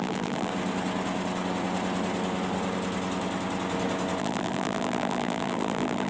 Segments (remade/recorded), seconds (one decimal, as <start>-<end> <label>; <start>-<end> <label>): 0.0-0.5 remade; 0.5-4.2 recorded; 4.2-6.1 remade